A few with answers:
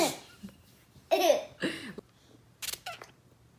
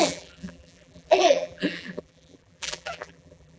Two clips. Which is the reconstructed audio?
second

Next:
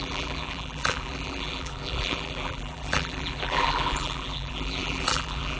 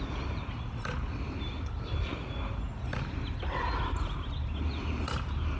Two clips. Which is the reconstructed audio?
first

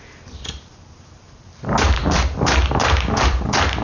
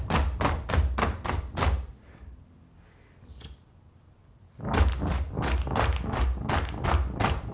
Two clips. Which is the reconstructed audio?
first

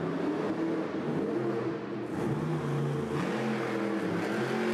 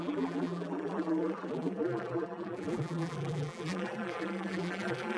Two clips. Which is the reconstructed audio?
second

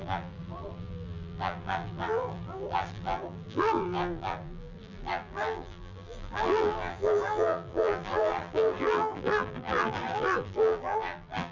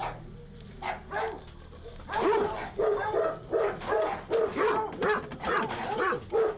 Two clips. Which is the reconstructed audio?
first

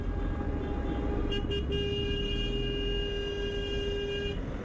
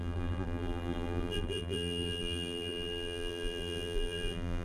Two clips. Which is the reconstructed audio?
second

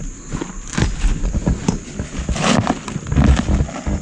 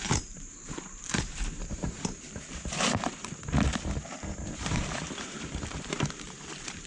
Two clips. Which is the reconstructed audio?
second